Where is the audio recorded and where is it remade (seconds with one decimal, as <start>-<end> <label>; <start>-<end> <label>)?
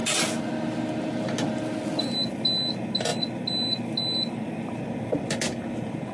0.0-6.1 recorded